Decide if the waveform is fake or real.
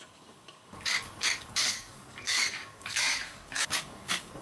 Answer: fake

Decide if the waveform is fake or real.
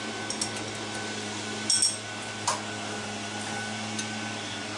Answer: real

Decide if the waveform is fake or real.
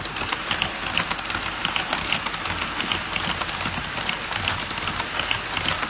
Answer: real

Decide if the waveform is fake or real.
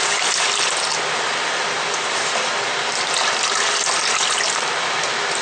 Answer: real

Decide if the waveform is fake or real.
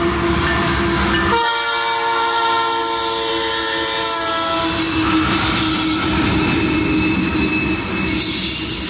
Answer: real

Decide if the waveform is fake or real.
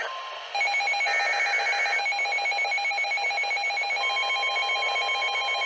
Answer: real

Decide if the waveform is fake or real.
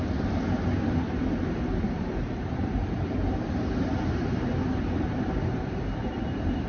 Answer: fake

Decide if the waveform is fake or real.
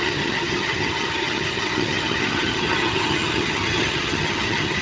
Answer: fake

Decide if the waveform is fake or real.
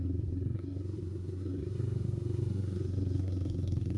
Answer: fake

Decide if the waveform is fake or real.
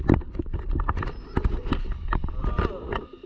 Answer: real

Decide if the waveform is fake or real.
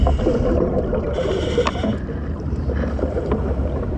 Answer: real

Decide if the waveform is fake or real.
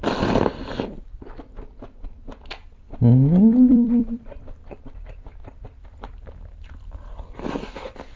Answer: fake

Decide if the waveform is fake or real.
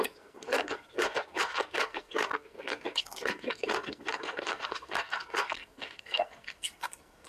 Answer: fake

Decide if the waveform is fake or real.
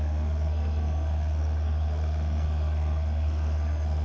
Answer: fake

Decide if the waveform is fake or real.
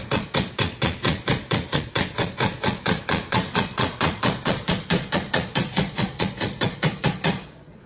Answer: fake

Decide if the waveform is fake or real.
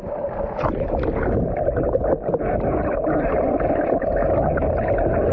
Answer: real